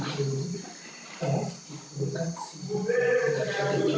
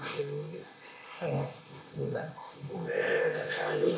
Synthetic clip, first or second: second